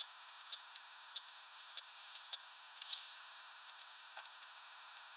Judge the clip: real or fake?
fake